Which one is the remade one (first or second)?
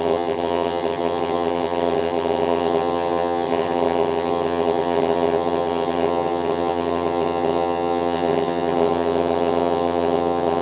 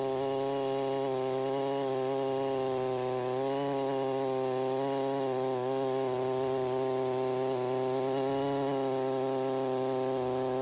first